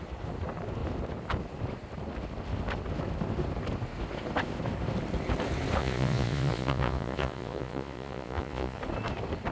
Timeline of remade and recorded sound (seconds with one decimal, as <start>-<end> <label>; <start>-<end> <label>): 0.0-5.8 recorded; 5.8-8.8 remade; 8.8-9.5 recorded